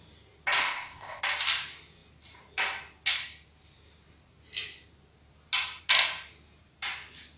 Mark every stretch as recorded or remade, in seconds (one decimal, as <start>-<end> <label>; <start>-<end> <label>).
0.0-0.6 recorded; 0.6-1.2 remade; 1.2-7.4 recorded